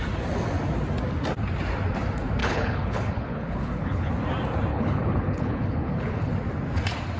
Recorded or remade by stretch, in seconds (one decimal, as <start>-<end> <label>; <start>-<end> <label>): 0.0-2.4 recorded; 2.4-4.1 remade; 4.1-4.7 recorded; 4.7-6.3 remade; 6.3-7.2 recorded